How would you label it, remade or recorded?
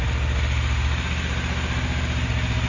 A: recorded